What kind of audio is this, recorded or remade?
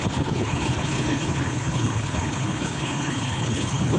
remade